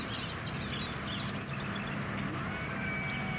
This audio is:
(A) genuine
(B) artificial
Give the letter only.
A